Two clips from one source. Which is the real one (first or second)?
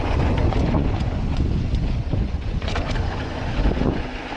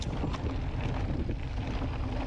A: second